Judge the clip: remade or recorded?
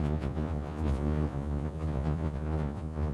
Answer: remade